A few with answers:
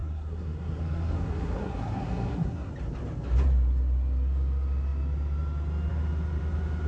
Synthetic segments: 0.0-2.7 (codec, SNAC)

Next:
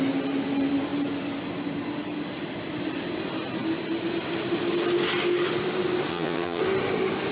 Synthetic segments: 6.1-6.6 (vocoder, HiFi-GAN)